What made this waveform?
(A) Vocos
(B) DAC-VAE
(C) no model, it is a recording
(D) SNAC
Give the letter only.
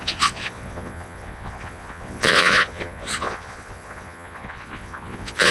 A